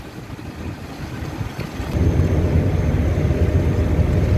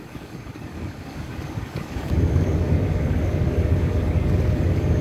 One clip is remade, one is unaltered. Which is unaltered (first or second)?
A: first